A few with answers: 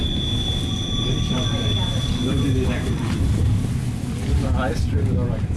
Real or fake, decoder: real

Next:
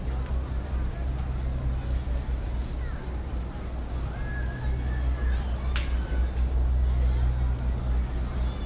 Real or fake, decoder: real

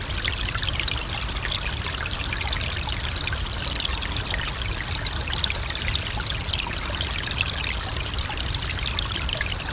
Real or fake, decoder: real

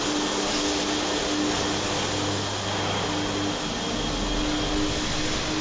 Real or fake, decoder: real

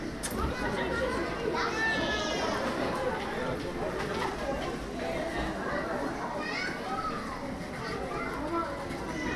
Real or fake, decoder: real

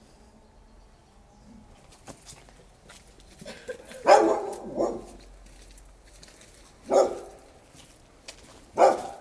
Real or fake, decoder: real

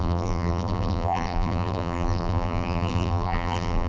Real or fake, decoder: fake, vocoder, BigVGAN v2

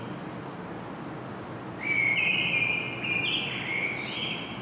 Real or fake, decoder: real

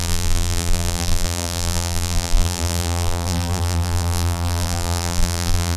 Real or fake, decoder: fake, vocoder, BigVGAN v2